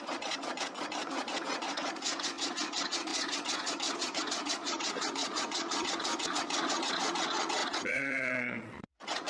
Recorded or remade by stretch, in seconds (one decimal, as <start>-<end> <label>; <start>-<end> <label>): 0.0-9.3 remade

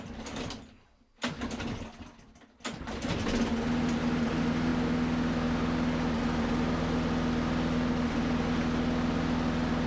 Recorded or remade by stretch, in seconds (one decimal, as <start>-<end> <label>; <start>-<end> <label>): 0.0-9.9 recorded

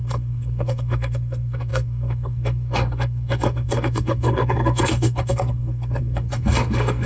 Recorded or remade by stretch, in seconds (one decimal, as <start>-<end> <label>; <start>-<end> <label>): 0.0-7.1 remade

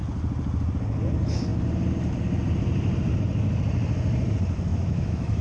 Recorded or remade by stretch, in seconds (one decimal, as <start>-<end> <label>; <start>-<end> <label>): 0.0-4.7 recorded; 4.7-5.4 remade

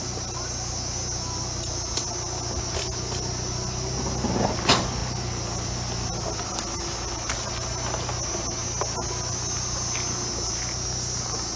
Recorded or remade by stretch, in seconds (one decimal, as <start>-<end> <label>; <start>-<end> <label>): 0.0-11.6 recorded

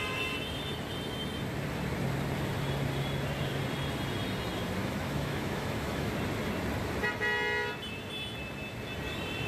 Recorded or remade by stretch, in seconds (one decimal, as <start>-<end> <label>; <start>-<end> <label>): 0.0-4.8 recorded; 4.8-6.1 remade; 6.1-9.5 recorded

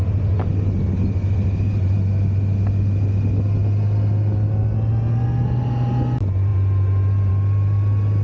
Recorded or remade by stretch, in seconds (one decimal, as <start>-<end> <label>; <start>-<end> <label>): 0.0-8.2 recorded